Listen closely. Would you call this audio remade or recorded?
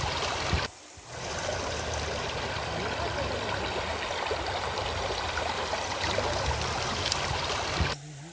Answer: recorded